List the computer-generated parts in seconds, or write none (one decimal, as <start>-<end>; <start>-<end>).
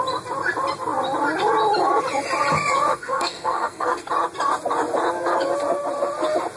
2.9-4.1